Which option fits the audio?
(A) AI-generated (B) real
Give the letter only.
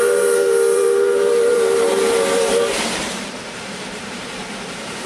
A